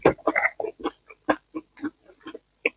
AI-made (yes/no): no